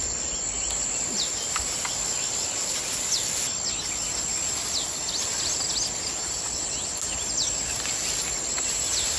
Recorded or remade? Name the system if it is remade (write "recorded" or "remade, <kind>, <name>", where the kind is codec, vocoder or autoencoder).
recorded